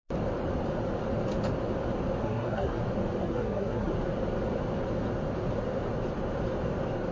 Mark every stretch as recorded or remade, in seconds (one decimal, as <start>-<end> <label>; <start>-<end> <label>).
0.0-2.2 recorded; 2.2-2.8 remade; 2.8-3.2 recorded; 3.2-3.9 remade; 3.9-7.1 recorded